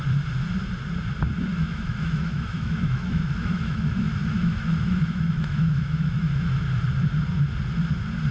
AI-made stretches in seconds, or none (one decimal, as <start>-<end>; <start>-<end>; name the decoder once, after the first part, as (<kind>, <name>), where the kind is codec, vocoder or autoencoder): 1.5-6.5 (autoencoder, DAC-VAE)